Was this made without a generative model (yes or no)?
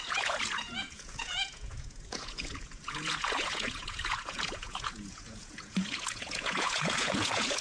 no